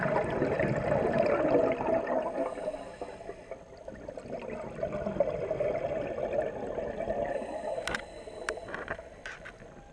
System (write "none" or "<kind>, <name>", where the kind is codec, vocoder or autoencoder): none